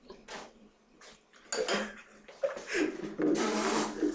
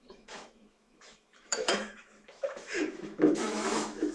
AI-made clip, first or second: second